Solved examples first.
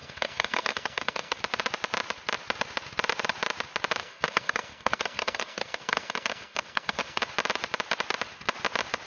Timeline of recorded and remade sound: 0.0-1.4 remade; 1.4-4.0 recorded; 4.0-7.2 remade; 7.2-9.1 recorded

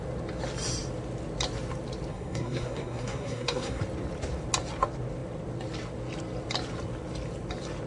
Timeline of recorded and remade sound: 0.0-2.1 recorded; 2.1-3.8 remade; 3.8-7.9 recorded

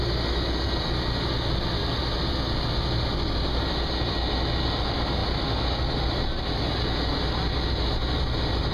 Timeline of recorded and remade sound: 0.0-8.7 recorded

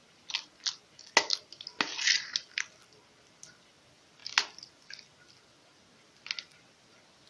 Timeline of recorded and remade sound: 0.0-7.3 recorded